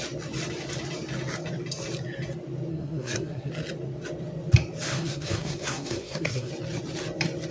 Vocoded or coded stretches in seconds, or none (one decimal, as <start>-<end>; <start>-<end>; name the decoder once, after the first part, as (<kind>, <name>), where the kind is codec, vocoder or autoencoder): 2.7-3.5 (codec, SNAC); 4.9-6.5